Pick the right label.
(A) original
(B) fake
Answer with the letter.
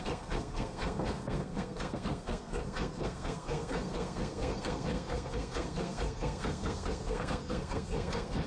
B